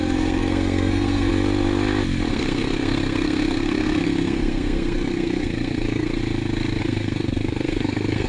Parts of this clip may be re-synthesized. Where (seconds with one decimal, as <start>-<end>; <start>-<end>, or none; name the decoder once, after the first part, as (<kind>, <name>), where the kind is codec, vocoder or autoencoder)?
0.0-1.3 (codec, SNAC); 2.3-6.2; 6.8-8.3